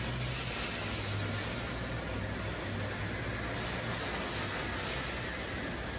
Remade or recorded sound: recorded